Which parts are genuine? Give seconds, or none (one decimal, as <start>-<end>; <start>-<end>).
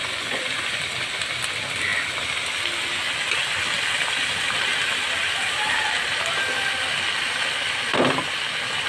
0.8-8.9